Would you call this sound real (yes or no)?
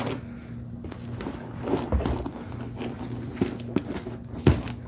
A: yes